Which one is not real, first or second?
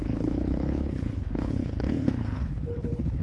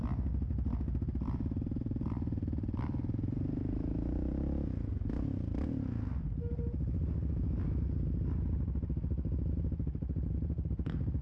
first